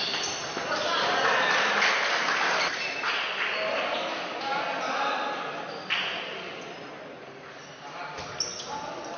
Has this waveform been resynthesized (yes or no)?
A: no